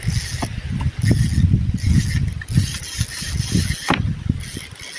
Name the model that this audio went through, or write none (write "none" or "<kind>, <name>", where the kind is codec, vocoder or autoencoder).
none